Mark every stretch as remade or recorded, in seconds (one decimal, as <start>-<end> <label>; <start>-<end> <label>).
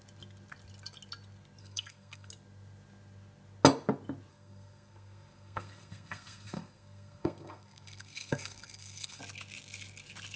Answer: 0.0-1.6 recorded; 1.6-2.3 remade; 2.3-4.3 recorded; 4.3-9.2 remade; 9.2-10.4 recorded